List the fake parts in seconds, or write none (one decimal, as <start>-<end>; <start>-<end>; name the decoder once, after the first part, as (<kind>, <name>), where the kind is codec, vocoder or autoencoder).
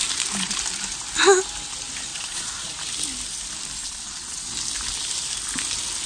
2.1-2.7 (vocoder, Vocos); 3.8-4.5